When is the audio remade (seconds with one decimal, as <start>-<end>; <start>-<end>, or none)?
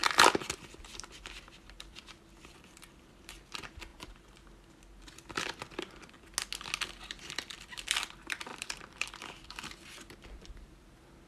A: 0.6-3.9; 7.2-11.3